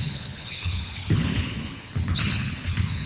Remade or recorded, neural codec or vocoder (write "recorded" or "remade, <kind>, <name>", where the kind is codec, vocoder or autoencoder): remade, codec, HILCodec